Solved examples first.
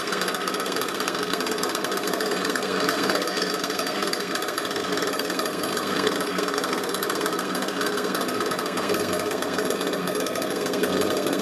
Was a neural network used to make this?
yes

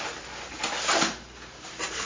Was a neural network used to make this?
no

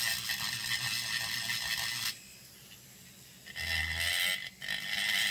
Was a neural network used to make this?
no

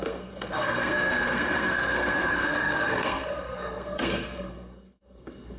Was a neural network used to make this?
yes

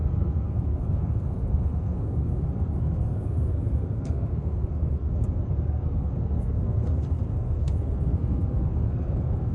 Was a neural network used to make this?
yes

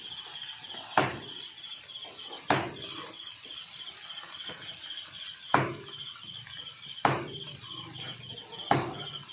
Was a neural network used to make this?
no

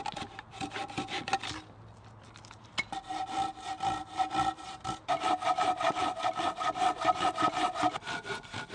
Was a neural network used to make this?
no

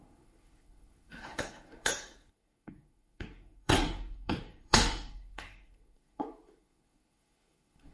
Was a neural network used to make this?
yes